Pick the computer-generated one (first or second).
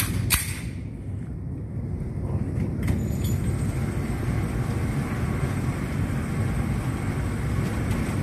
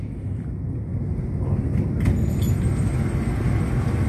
first